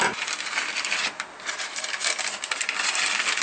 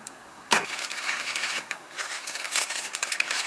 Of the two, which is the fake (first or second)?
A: second